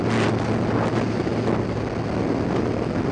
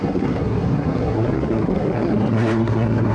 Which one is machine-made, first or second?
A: second